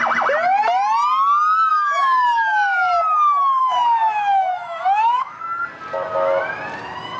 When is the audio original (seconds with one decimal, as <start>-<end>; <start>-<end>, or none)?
0.0-1.7; 2.9-3.6; 5.4-7.2